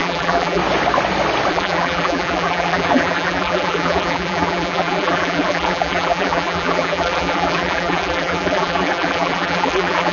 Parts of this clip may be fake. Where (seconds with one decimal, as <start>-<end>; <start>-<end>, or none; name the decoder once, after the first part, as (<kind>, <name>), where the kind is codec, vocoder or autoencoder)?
0.0-0.6 (vocoder, BigVGAN v2); 1.5-10.1

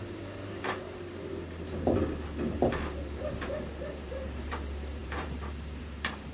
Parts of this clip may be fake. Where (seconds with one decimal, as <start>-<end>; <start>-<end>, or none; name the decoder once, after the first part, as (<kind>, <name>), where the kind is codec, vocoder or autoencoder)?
0.0-1.3 (vocoder, BigVGAN v2); 3.2-6.3

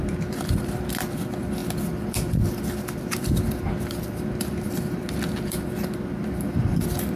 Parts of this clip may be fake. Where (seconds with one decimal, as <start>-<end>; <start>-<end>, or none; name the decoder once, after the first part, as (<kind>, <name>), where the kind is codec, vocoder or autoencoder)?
0.0-7.2 (vocoder, BigVGAN v2)

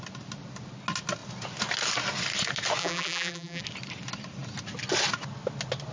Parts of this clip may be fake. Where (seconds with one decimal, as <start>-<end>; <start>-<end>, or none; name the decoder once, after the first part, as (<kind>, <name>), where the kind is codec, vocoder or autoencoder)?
2.8-3.6 (vocoder, BigVGAN v2)

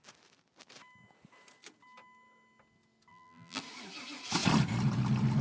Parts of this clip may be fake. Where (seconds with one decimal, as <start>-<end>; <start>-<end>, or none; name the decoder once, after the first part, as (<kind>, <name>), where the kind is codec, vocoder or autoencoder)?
3.1-3.6 (vocoder, BigVGAN v2)

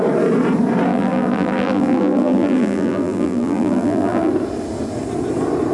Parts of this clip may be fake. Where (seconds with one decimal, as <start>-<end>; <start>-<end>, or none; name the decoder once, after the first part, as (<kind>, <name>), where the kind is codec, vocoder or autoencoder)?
0.9-4.3 (vocoder, BigVGAN v2)

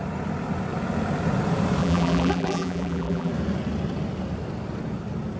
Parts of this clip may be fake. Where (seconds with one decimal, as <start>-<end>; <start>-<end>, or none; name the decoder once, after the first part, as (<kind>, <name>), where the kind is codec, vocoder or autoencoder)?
1.8-3.3 (vocoder, BigVGAN v2)

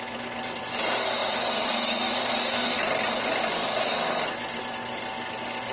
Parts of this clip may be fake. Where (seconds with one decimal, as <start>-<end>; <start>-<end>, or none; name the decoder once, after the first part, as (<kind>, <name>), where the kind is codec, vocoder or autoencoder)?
1.2-3.9 (vocoder, BigVGAN v2)